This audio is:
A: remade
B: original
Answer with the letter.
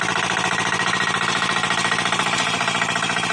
B